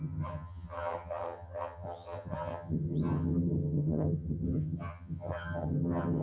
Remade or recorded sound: remade